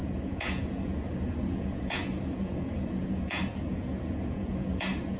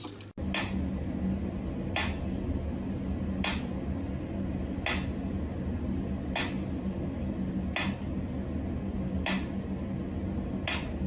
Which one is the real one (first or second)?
second